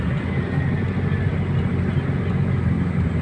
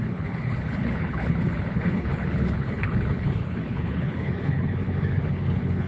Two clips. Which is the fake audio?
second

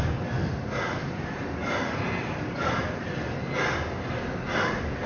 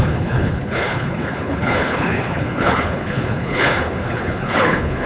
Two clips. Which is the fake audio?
second